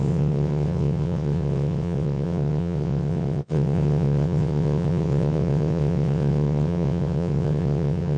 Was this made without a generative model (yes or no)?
no